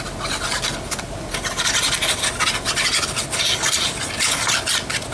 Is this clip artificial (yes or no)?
no